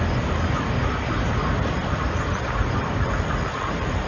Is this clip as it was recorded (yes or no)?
yes